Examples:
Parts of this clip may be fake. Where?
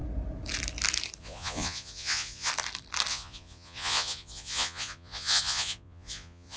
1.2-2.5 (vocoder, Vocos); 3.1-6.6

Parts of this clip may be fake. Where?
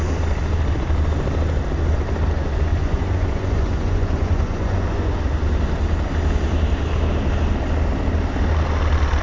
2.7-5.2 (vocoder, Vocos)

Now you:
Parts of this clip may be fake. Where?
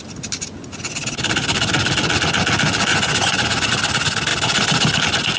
2.9-3.7 (vocoder, Vocos)